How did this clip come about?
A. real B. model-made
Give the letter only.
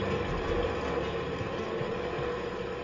A